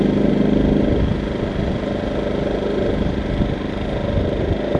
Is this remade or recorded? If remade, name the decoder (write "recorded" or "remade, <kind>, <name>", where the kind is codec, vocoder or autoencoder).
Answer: recorded